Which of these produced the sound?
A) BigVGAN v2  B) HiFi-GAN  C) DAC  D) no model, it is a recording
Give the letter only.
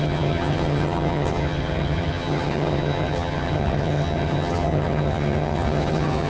B